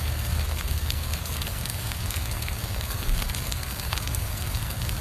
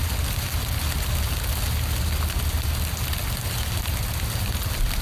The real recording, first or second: second